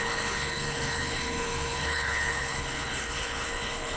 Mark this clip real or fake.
fake